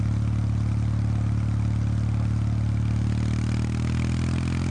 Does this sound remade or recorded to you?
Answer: recorded